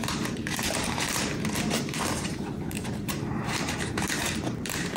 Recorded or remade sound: remade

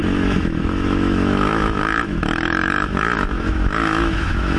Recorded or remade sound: remade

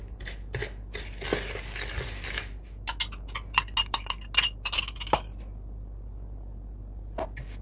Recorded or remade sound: recorded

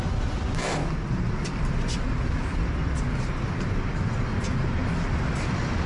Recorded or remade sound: recorded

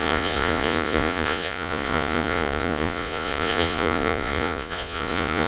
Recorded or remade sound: remade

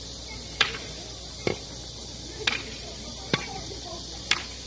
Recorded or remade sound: remade